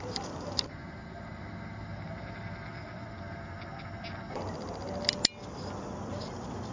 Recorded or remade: recorded